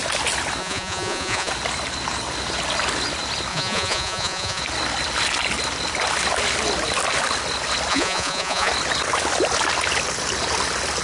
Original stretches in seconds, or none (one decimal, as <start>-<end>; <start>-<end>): 0.0-0.6; 1.5-3.5; 4.6-7.9; 8.7-11.0